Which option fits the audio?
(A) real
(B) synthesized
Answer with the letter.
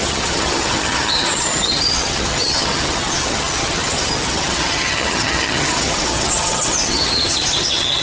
B